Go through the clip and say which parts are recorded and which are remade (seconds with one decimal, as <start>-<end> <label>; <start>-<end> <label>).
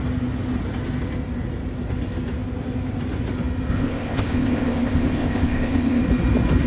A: 0.0-3.7 recorded; 3.7-6.0 remade; 6.0-6.7 recorded